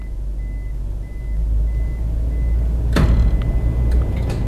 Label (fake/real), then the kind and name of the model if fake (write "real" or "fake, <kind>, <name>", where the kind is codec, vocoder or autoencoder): real